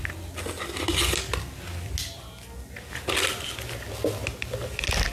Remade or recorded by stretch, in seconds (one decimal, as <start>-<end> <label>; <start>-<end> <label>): 0.0-5.1 recorded